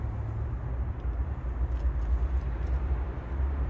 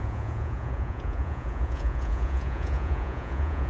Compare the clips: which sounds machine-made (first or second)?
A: second